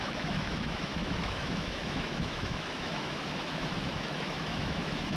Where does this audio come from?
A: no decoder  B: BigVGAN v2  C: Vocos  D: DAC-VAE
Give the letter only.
D